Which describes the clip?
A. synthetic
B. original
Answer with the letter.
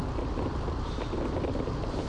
B